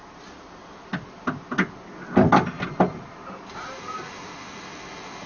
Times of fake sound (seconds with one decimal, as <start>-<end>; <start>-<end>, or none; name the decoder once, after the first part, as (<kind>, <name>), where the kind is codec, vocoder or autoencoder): none